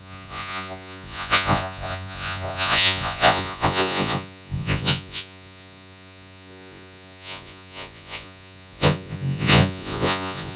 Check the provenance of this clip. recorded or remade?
remade